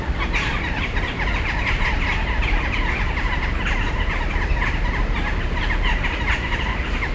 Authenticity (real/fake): real